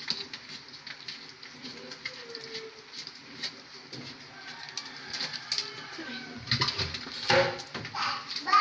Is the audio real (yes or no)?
yes